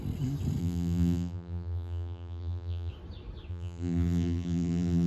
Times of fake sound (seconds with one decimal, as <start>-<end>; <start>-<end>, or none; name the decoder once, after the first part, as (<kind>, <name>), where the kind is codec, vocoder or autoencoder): 0.6-2.9 (vocoder, BigVGAN v2); 3.5-5.1

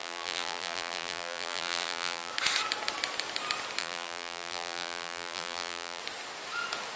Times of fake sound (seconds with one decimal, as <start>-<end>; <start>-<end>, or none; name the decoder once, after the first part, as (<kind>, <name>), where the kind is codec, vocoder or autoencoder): 0.0-2.3 (vocoder, BigVGAN v2); 3.8-6.0

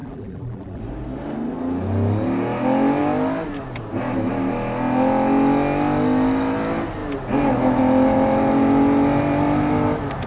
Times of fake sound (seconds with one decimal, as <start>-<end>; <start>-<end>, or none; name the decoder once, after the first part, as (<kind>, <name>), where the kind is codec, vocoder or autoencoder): 0.0-0.8 (vocoder, BigVGAN v2)

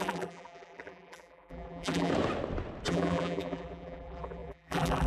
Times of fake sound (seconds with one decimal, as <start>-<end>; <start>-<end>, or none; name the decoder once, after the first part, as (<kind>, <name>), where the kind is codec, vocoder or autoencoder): 0.0-2.1 (vocoder, BigVGAN v2); 2.9-5.1

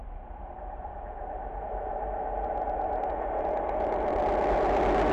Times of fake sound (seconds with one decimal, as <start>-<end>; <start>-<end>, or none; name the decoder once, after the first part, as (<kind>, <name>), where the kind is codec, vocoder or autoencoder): 0.0-3.1 (vocoder, BigVGAN v2)

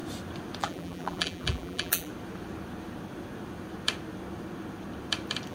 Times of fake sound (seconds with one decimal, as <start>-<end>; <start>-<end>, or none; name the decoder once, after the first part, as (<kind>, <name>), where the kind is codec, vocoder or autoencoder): 0.6-2.1 (vocoder, BigVGAN v2)

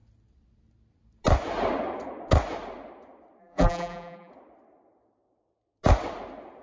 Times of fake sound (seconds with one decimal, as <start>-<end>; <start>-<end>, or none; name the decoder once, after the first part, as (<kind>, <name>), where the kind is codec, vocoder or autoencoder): 3.4-4.3 (vocoder, BigVGAN v2)